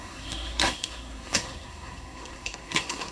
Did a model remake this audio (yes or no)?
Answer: yes